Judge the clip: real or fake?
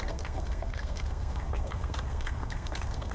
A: fake